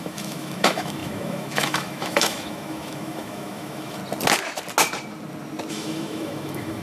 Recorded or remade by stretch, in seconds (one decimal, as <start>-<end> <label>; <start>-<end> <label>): 0.0-4.0 remade; 4.0-5.7 recorded; 5.7-6.8 remade